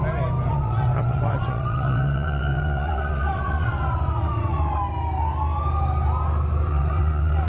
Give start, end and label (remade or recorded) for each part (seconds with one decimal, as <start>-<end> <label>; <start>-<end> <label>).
0.0-0.5 recorded; 0.5-4.8 remade; 4.8-6.7 recorded; 6.7-7.5 remade